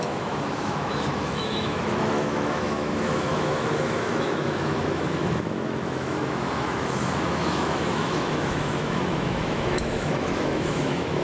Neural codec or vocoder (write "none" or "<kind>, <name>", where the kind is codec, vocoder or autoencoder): autoencoder, DAC-VAE